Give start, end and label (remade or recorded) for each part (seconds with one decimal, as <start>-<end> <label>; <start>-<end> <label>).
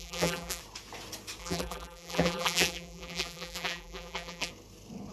0.0-0.6 remade; 0.6-1.4 recorded; 1.4-4.5 remade; 4.5-5.1 recorded